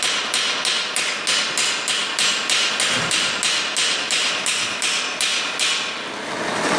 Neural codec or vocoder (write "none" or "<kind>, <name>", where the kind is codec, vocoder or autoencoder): none